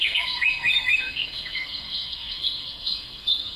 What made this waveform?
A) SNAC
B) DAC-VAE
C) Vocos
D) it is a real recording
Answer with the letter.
A